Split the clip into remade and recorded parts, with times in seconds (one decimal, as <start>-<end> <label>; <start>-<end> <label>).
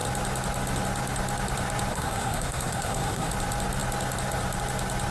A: 0.0-1.9 recorded; 1.9-3.3 remade; 3.3-5.1 recorded